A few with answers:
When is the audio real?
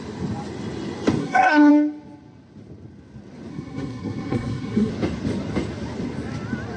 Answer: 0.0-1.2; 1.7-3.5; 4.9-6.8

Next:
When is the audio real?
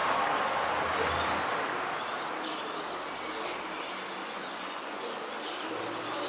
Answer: 0.0-4.2; 5.2-6.3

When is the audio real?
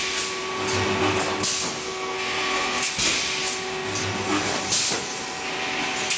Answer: 0.0-1.8; 2.8-6.2